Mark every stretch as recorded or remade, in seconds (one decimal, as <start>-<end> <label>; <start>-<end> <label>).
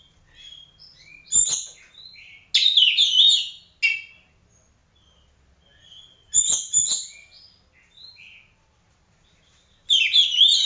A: 0.0-10.7 recorded